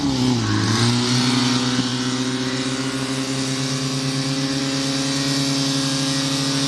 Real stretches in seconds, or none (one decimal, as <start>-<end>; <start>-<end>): 0.0-6.7